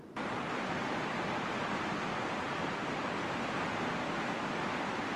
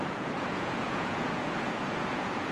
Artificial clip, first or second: second